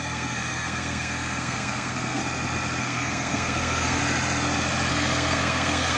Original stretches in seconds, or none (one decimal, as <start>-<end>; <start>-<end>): 2.2-2.8; 4.0-4.9